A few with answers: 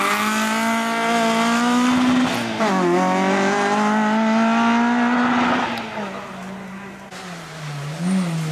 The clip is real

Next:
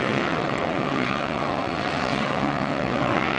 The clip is fake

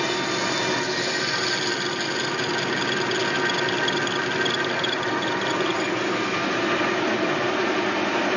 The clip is real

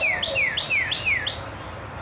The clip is real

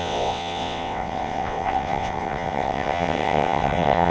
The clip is fake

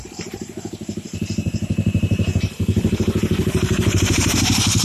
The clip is fake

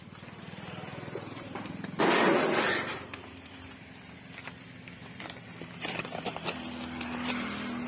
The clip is fake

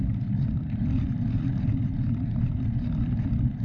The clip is fake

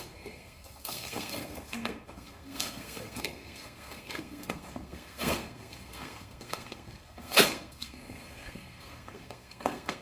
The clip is fake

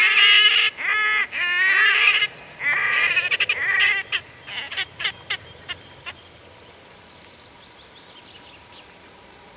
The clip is real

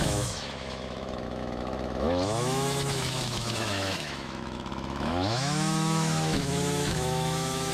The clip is fake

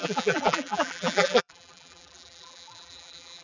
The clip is fake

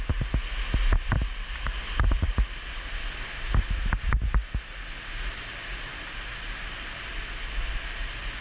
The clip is real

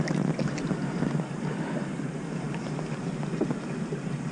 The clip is real